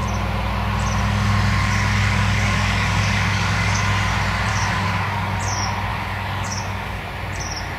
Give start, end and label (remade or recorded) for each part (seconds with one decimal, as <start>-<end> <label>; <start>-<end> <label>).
0.0-1.6 recorded; 1.6-3.8 remade; 3.8-4.5 recorded; 4.5-5.4 remade; 5.4-5.9 recorded; 5.9-7.0 remade; 7.0-7.8 recorded